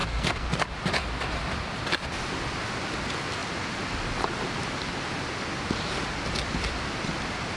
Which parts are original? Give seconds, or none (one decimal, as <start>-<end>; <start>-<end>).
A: 0.5-7.6

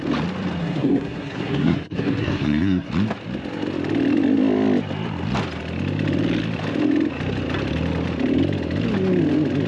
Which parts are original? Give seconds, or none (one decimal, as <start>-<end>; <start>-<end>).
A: 0.0-0.6; 2.9-9.7

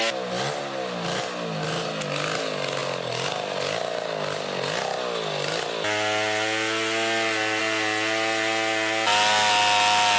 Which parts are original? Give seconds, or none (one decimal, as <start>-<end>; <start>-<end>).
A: 0.0-10.2

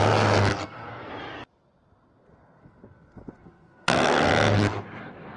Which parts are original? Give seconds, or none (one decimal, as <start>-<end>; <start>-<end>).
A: 0.0-0.5; 1.1-2.6; 4.3-5.4